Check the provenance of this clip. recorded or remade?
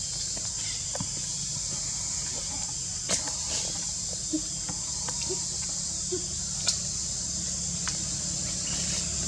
recorded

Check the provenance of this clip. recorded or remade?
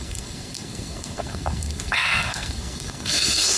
remade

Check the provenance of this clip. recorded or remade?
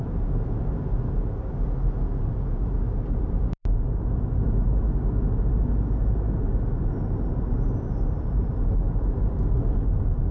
recorded